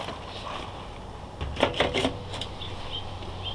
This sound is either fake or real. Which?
real